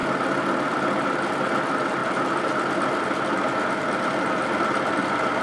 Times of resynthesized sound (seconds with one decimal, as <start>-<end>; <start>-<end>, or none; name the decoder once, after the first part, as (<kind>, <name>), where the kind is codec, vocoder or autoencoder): none